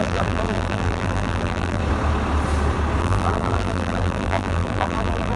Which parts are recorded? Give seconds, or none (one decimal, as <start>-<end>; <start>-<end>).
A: 1.8-3.0

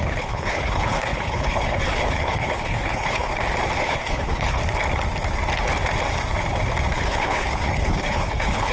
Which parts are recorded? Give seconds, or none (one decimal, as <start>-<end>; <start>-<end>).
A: 3.3-3.8; 4.6-6.9

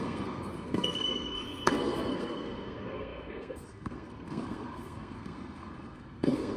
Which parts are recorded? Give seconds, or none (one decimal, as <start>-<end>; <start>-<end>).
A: none

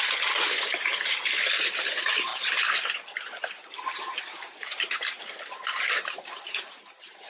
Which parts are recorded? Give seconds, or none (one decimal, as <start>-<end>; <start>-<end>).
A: 0.0-7.3

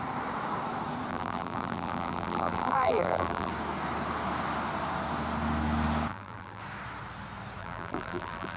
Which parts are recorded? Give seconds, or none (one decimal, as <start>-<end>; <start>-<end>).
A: 0.0-1.1; 3.5-6.1; 6.6-7.6

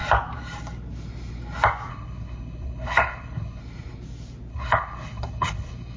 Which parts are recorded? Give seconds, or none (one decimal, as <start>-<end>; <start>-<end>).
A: 0.0-1.9; 3.6-4.5

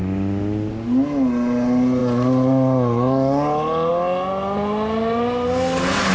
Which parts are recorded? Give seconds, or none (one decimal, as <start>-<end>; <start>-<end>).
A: 0.0-6.1

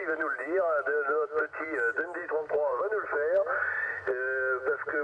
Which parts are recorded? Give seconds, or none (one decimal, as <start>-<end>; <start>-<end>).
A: 0.0-2.2; 2.8-5.0